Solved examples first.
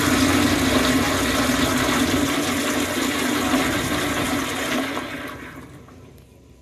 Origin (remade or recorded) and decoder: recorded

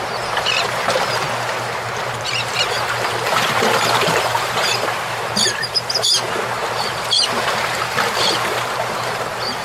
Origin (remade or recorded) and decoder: remade, vocoder, BigVGAN v2